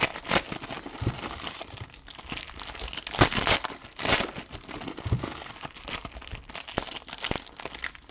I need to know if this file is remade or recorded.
recorded